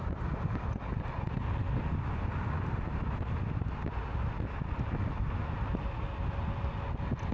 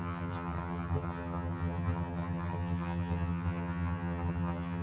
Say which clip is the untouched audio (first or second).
first